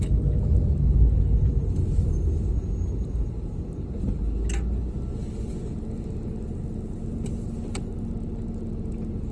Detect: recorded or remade recorded